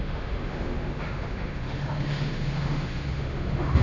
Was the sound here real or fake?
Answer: fake